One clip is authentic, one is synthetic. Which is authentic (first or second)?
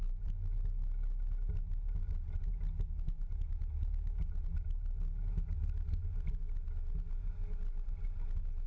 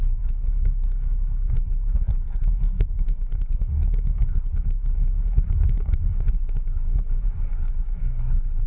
first